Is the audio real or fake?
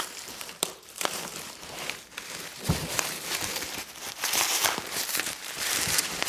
fake